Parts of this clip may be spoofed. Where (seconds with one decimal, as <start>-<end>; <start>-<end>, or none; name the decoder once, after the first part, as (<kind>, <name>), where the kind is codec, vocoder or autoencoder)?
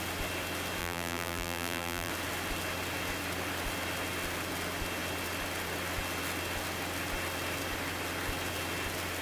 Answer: 0.8-2.1 (vocoder, BigVGAN v2)